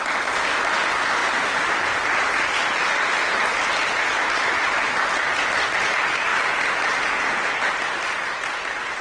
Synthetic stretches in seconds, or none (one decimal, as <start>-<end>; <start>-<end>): none